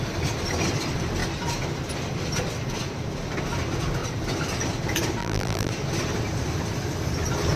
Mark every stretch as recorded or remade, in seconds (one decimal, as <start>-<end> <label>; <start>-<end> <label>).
0.0-5.2 recorded; 5.2-5.7 remade; 5.7-7.6 recorded